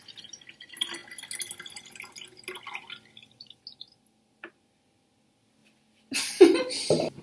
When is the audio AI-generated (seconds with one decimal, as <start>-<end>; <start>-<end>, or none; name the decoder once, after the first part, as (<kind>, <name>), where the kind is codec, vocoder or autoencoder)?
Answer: none